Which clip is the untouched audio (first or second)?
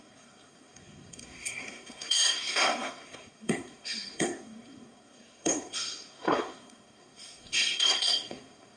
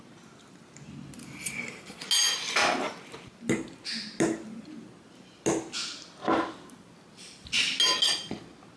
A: second